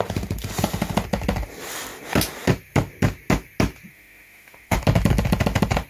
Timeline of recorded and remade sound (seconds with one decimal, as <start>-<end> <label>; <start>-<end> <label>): 0.0-3.9 recorded; 3.9-4.8 remade; 4.8-5.9 recorded